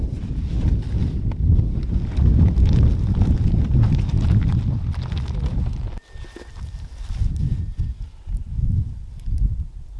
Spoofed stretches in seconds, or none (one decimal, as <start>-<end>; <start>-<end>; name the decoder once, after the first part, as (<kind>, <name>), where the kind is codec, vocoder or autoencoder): none